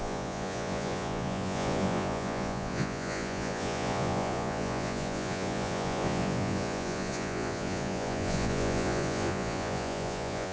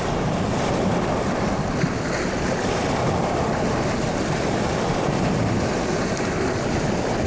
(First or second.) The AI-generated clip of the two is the first